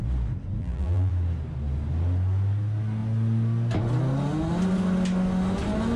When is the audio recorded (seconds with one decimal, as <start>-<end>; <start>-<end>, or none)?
0.0-0.6; 1.1-6.0